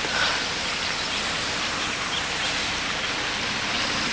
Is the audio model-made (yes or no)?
no